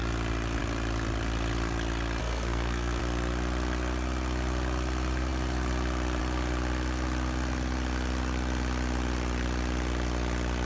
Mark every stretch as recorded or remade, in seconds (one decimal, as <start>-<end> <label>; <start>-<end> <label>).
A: 0.0-2.2 recorded; 2.2-3.0 remade; 3.0-10.7 recorded

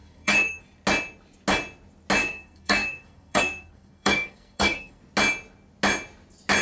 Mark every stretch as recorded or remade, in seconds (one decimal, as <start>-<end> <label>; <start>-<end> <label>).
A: 0.0-0.6 remade; 0.6-2.2 recorded; 2.2-5.0 remade; 5.0-6.6 recorded

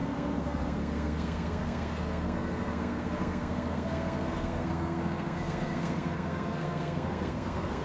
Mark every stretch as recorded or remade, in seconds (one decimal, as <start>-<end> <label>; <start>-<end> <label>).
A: 0.0-7.8 remade

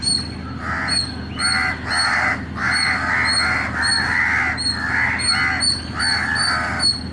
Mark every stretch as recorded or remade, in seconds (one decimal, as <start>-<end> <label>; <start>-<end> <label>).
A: 0.0-7.1 recorded

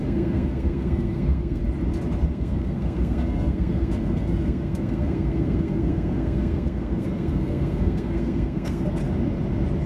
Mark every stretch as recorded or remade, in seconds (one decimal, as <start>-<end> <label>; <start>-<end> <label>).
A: 0.0-1.6 remade; 1.6-2.3 recorded; 2.3-9.0 remade; 9.0-9.9 recorded

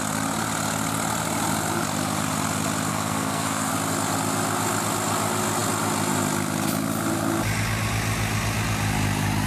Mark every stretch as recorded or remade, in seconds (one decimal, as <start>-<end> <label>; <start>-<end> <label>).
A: 0.0-2.9 recorded; 2.9-3.7 remade; 3.7-9.5 recorded

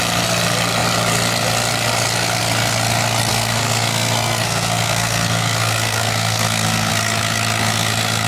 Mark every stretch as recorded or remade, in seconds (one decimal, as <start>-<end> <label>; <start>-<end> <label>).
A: 0.0-3.3 recorded; 3.3-6.9 remade; 6.9-8.3 recorded